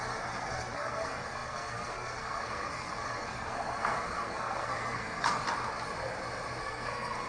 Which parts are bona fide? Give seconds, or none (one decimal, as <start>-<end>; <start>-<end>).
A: 5.4-6.6